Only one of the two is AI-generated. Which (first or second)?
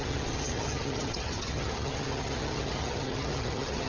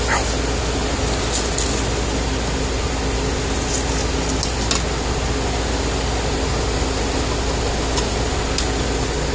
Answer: first